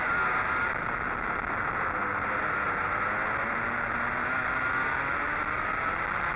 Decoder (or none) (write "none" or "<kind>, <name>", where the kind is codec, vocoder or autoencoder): none